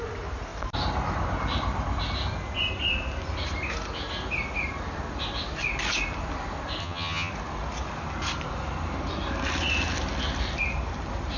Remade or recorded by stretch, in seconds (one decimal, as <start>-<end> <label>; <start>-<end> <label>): 0.0-6.8 recorded; 6.8-7.3 remade; 7.3-11.4 recorded